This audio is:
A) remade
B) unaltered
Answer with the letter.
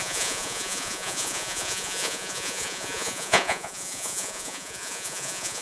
A